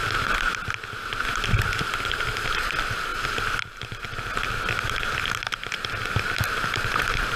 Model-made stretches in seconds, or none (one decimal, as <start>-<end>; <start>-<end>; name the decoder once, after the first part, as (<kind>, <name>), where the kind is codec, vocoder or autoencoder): none